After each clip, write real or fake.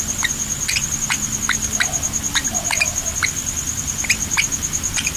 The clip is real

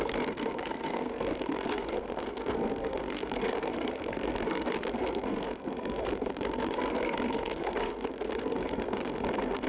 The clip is fake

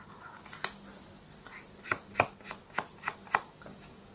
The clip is real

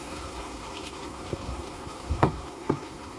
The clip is fake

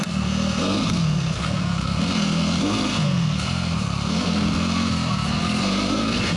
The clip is fake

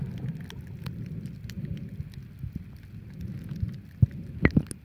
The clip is real